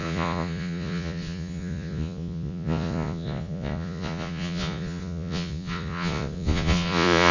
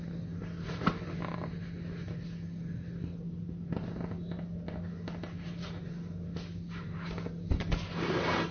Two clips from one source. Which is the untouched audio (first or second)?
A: second